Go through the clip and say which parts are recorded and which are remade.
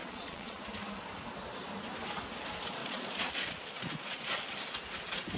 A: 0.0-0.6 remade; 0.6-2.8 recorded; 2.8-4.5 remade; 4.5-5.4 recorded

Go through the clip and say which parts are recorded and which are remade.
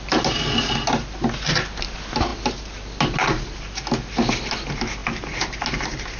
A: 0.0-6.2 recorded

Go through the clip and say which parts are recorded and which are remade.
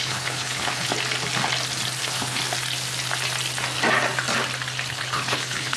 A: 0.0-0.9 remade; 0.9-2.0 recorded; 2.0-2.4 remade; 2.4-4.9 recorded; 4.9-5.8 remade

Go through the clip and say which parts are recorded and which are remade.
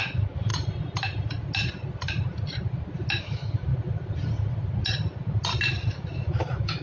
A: 0.0-0.5 remade; 0.5-3.2 recorded; 3.2-3.7 remade; 3.7-5.9 recorded; 5.9-6.8 remade